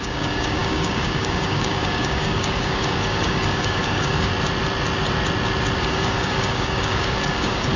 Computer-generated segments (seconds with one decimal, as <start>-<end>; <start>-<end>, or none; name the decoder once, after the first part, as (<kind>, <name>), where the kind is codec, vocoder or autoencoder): 0.0-4.3 (codec, DAC); 5.8-7.8